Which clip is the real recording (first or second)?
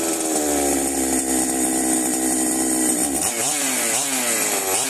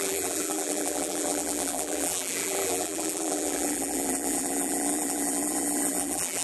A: first